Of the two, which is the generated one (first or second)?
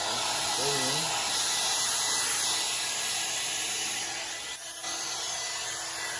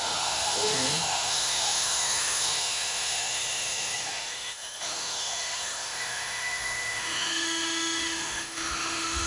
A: second